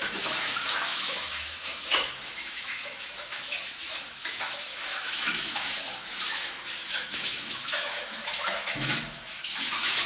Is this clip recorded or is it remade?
remade